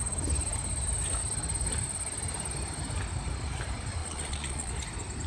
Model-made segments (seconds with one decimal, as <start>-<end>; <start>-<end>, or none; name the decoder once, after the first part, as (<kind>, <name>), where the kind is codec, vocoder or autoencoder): 4.0-4.7 (vocoder, Vocos)